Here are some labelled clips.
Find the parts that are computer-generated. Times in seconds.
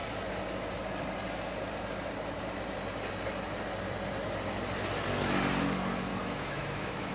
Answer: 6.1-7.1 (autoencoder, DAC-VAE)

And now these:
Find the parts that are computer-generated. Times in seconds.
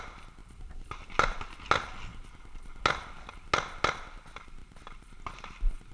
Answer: 4.6-5.2 (vocoder, BigVGAN v2)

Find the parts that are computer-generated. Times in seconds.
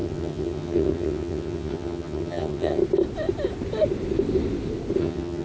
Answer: 0.0-2.8 (vocoder, HiFi-GAN); 5.0-5.4